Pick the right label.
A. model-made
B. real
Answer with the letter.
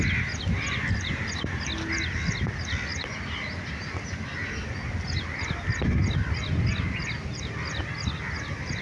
B